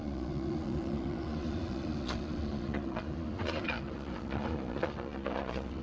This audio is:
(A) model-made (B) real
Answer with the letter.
A